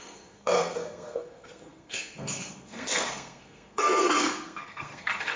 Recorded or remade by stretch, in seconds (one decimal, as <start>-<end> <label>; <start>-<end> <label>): 0.0-5.4 remade